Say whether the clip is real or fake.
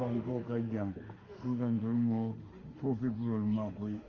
fake